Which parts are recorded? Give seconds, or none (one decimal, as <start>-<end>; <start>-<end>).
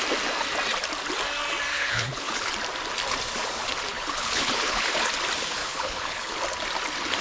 0.0-1.7; 2.5-3.9; 5.1-5.6; 6.4-7.2